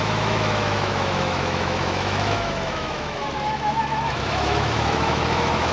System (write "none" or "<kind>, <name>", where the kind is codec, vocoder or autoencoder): autoencoder, DAC-VAE